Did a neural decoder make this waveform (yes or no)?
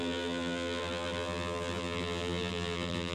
yes